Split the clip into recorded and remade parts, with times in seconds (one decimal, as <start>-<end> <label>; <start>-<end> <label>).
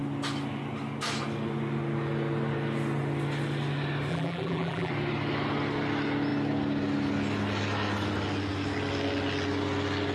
0.0-4.1 recorded; 4.1-4.9 remade; 4.9-10.1 recorded